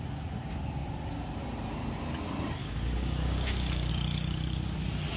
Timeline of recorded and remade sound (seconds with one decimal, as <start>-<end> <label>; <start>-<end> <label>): 0.0-2.6 recorded; 2.6-3.9 remade; 3.9-5.2 recorded